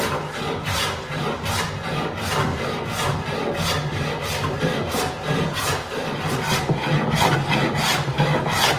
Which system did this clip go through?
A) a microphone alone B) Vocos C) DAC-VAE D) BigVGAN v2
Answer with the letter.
A